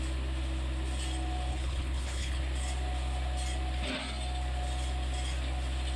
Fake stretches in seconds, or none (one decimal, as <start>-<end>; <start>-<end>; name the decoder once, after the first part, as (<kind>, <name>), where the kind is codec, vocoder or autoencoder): 1.5-2.4 (codec, HILCodec)